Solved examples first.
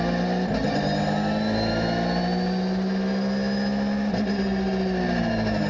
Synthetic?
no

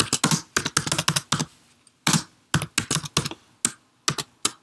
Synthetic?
no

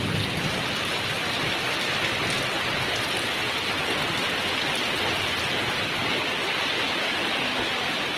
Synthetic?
no